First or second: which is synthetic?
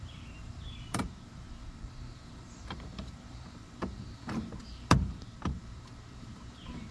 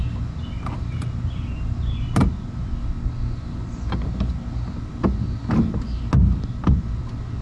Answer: first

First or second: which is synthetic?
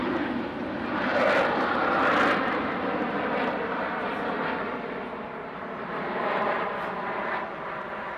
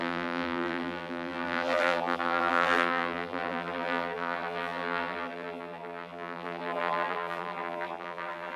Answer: second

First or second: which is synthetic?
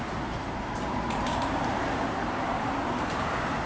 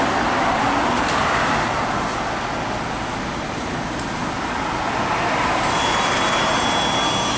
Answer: first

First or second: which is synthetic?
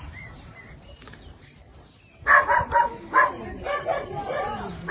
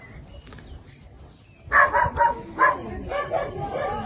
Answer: first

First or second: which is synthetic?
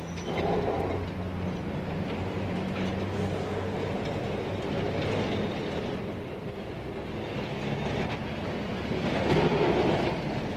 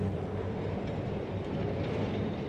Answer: second